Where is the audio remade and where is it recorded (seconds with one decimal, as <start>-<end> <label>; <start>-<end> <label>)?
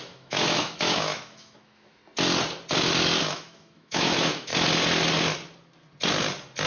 0.0-2.0 remade; 2.0-3.3 recorded; 3.3-4.5 remade; 4.5-6.7 recorded